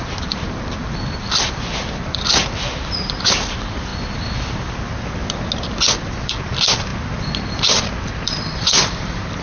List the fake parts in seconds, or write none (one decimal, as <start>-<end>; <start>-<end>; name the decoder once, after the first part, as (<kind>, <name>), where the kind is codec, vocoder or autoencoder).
0.0-3.9 (vocoder, BigVGAN v2); 4.7-5.2; 6.2-9.4